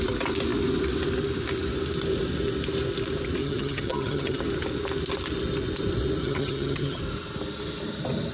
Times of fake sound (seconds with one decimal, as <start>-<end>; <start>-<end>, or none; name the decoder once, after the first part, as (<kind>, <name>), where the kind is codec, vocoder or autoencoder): 3.4-4.4 (vocoder, HiFi-GAN); 6.2-7.0